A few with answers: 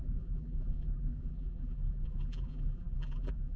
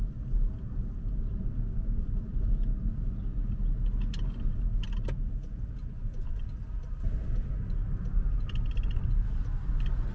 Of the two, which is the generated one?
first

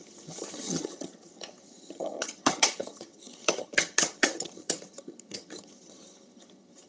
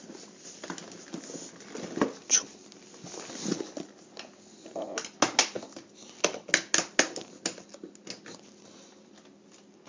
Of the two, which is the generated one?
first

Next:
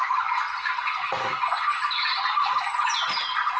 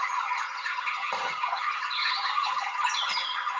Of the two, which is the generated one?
second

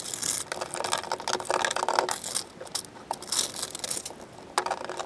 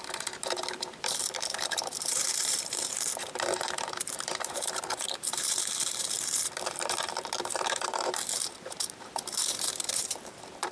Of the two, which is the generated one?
second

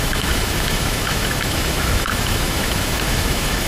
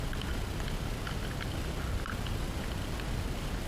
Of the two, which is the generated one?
first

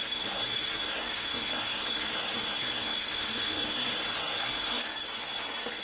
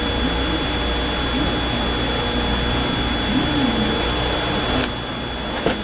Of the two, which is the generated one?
first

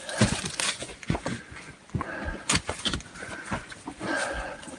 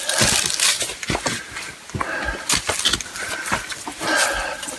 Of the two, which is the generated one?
first